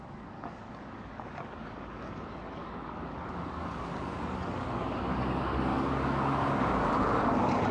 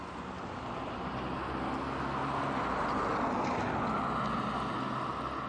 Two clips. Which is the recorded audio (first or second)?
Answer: second